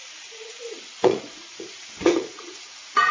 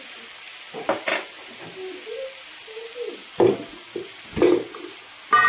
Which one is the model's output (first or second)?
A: first